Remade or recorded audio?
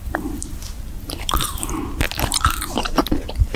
remade